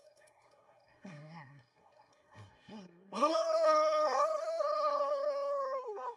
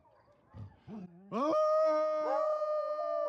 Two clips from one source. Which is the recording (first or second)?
second